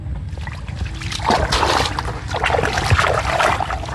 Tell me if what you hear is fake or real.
real